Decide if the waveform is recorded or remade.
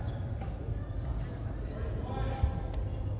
recorded